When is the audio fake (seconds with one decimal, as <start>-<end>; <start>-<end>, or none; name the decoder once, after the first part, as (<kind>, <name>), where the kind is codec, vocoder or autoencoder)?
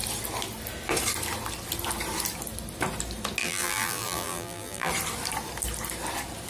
3.4-4.9 (vocoder, BigVGAN v2)